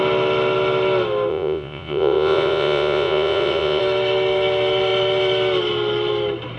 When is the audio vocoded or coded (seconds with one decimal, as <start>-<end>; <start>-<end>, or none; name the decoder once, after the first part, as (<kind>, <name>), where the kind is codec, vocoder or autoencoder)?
1.3-3.8 (vocoder, Vocos)